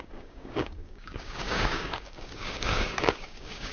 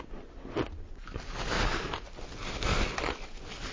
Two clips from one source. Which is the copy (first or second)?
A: first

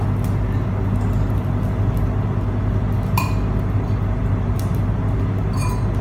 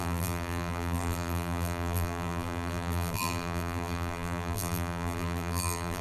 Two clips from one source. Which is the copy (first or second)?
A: second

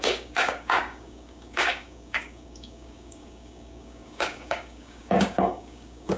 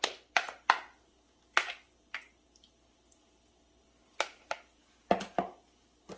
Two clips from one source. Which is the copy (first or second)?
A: first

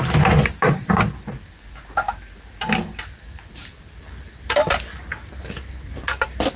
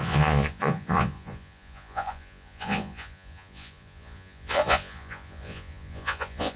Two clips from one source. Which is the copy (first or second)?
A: second